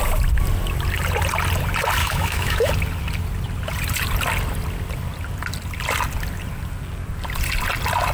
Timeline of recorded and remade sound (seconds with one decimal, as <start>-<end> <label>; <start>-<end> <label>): 0.0-2.0 recorded; 2.0-2.7 remade; 2.7-8.1 recorded